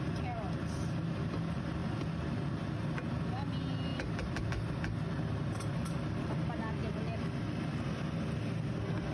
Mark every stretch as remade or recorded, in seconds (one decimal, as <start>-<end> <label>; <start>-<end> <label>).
0.0-9.1 recorded